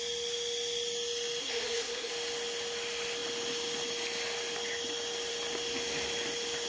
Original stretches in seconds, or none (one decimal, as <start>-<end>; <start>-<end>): 0.0-1.4; 2.1-6.7